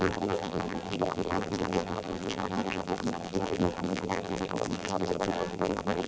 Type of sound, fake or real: fake